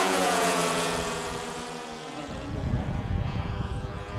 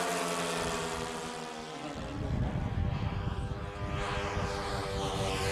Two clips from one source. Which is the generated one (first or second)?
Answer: first